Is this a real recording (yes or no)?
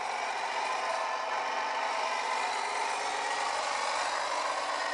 yes